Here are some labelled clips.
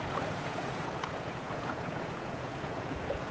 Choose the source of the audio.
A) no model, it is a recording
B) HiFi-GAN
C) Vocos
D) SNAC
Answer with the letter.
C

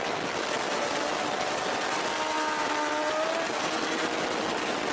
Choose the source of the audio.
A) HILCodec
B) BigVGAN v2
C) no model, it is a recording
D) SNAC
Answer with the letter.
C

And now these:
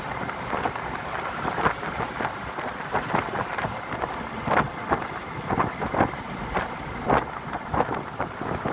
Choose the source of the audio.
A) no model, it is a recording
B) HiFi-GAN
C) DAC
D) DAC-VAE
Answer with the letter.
A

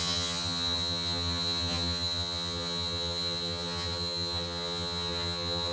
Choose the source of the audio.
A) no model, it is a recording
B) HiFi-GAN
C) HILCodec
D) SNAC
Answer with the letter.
B